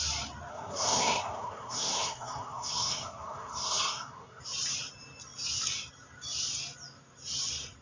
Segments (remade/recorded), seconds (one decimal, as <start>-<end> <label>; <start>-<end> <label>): 0.0-0.5 recorded; 0.5-4.4 remade; 4.4-7.8 recorded